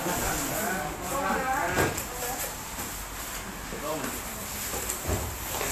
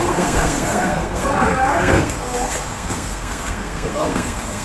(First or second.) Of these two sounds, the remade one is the second